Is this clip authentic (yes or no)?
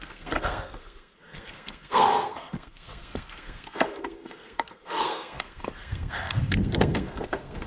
no